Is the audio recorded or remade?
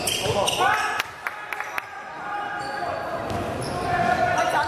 recorded